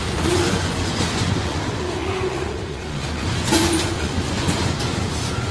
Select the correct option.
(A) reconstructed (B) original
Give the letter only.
A